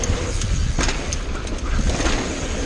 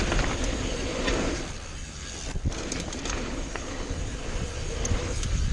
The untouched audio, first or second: first